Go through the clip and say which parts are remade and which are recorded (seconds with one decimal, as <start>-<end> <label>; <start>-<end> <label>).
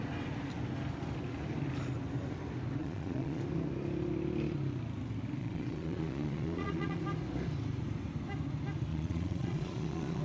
0.0-2.8 recorded; 2.8-3.4 remade; 3.4-5.4 recorded; 5.4-7.0 remade; 7.0-8.9 recorded; 8.9-10.2 remade